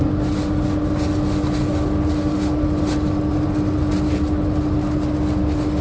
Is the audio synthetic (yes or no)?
no